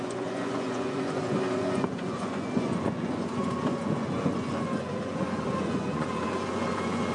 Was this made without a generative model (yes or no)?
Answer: no